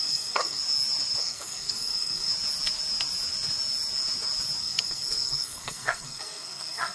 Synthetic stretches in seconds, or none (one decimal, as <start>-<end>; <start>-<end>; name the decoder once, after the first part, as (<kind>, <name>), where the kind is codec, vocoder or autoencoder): 0.0-0.6 (codec, SNAC); 1.2-2.3; 4.6-6.9